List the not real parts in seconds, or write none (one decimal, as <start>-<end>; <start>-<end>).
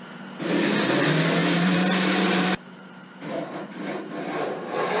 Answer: 1.4-4.1